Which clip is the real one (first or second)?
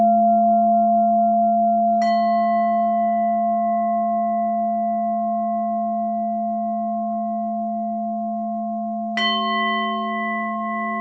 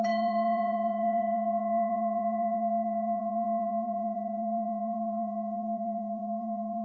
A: first